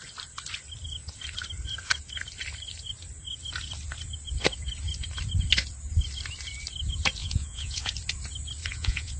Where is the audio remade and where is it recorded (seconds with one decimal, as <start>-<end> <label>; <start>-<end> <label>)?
0.0-7.2 recorded; 7.2-7.9 remade; 7.9-8.6 recorded; 8.6-9.2 remade